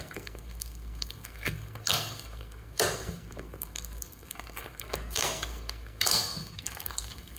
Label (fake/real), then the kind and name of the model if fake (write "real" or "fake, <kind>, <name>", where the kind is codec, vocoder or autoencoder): fake, codec, SNAC